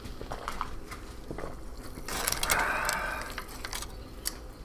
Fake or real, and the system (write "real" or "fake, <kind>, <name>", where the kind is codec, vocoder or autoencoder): real